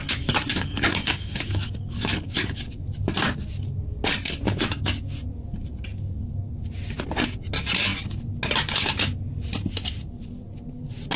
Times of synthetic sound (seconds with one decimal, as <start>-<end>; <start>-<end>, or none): 0.0-2.8; 4.1-5.1